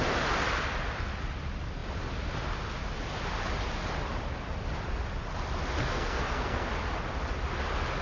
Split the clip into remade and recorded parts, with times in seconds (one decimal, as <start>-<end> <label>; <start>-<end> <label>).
0.0-5.8 recorded; 5.8-6.7 remade; 6.7-8.0 recorded